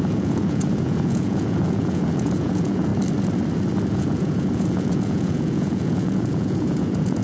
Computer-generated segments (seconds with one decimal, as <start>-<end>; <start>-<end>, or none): 0.0-2.9; 3.9-7.2